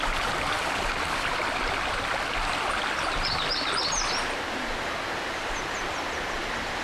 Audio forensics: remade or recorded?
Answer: recorded